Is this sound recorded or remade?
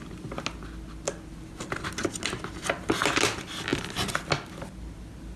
recorded